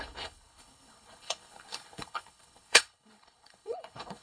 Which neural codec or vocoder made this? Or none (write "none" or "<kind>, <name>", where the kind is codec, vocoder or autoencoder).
codec, HILCodec